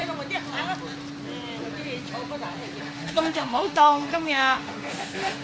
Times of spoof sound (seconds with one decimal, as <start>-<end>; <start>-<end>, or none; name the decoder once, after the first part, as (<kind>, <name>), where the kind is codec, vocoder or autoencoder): 2.8-5.4 (autoencoder, DAC-VAE)

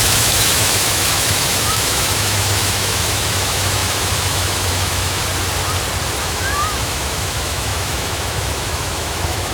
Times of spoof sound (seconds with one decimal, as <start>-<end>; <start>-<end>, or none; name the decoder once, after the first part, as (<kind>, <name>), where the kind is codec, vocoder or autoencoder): 0.0-5.2 (autoencoder, DAC-VAE); 6.2-9.5

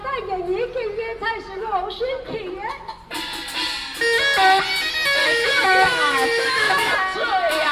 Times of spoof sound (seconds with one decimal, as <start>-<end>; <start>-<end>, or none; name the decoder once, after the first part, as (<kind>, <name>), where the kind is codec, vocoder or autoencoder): 5.2-6.9 (autoencoder, DAC-VAE)

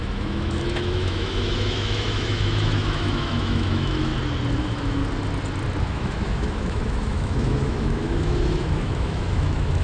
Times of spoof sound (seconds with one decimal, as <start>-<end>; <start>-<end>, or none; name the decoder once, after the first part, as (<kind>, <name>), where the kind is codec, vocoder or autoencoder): 0.0-4.1 (autoencoder, DAC-VAE); 4.6-5.0; 5.8-9.8

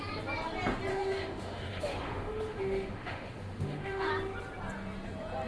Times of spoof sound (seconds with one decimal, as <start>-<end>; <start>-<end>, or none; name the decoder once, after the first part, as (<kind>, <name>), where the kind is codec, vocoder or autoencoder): 0.9-4.1 (autoencoder, DAC-VAE)